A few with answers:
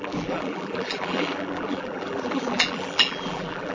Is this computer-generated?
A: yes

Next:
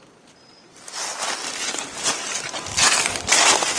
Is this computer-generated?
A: no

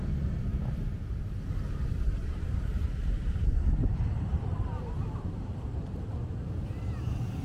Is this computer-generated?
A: yes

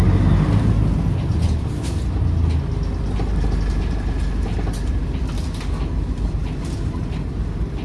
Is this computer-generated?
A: no